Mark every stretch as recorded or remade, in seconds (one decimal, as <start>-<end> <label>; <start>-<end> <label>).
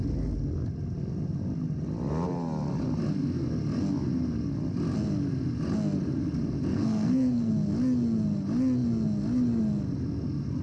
0.0-6.7 recorded; 6.7-7.5 remade; 7.5-10.6 recorded